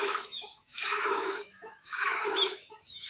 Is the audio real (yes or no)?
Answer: no